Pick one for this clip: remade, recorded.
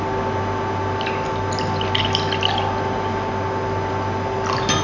recorded